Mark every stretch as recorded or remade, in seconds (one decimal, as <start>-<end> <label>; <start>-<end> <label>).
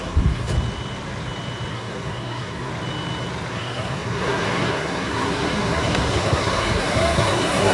0.0-0.5 remade; 0.5-1.7 recorded; 1.7-2.7 remade; 2.7-3.5 recorded; 3.5-7.7 remade